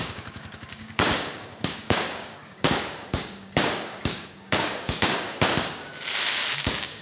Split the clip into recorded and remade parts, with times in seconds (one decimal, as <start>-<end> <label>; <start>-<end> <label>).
0.0-5.9 remade; 5.9-6.5 recorded; 6.5-7.0 remade

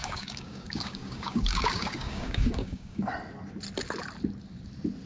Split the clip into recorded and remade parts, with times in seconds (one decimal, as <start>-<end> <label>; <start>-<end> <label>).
0.0-3.1 remade; 3.1-5.1 recorded

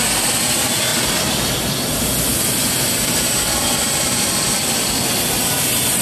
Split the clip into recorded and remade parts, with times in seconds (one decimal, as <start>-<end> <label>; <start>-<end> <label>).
0.0-6.0 recorded

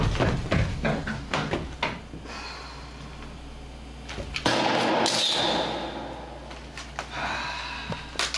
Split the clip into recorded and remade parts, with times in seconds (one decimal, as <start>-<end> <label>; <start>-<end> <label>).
0.0-0.7 recorded; 0.7-1.5 remade; 1.5-8.4 recorded

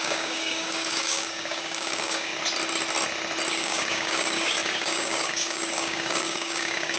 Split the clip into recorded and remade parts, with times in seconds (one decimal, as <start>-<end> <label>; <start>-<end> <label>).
0.0-2.3 remade; 2.3-3.5 recorded; 3.5-7.0 remade

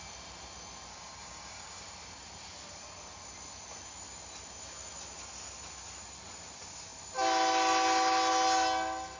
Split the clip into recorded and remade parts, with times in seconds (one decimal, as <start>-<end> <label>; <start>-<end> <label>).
0.0-0.9 recorded; 0.9-1.8 remade; 1.8-9.2 recorded